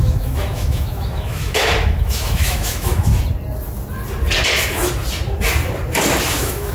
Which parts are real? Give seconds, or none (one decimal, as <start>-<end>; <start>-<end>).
3.1-6.3